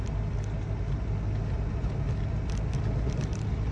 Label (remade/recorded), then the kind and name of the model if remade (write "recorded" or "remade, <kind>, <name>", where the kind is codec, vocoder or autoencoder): recorded